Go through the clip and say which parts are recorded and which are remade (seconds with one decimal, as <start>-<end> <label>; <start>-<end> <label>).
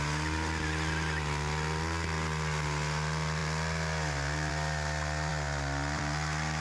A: 0.0-6.6 recorded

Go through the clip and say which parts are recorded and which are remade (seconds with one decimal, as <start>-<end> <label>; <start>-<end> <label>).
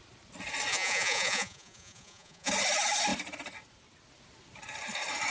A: 0.0-0.7 recorded; 0.7-2.5 remade; 2.5-5.3 recorded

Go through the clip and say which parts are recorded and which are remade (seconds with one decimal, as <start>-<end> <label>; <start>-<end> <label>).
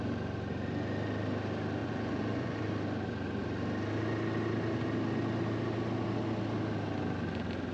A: 0.0-1.8 recorded; 1.8-2.6 remade; 2.6-7.7 recorded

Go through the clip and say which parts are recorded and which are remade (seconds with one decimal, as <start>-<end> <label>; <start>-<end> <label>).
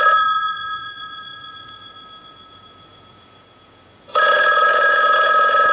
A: 0.0-5.7 remade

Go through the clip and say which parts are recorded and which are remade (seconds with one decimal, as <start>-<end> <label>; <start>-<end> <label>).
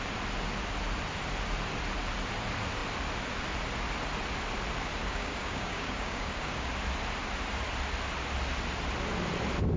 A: 0.0-5.0 recorded; 5.0-6.7 remade; 6.7-9.8 recorded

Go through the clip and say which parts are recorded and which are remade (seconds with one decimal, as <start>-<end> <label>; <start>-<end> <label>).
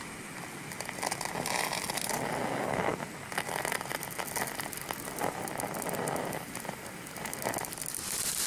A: 0.0-8.5 recorded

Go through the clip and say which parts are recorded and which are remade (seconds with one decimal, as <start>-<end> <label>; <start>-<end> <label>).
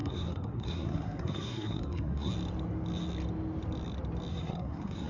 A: 0.0-2.3 remade; 2.3-4.3 recorded; 4.3-5.1 remade